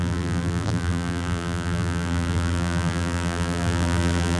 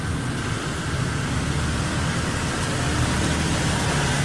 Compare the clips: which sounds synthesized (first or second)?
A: first